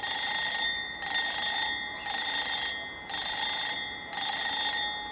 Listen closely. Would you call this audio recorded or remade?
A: recorded